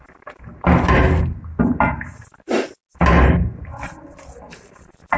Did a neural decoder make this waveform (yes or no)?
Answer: no